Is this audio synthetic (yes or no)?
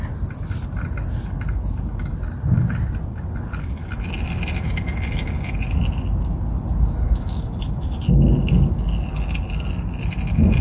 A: no